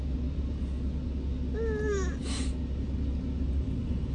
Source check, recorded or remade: recorded